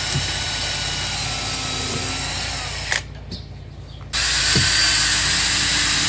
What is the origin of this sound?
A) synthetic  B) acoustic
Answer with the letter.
B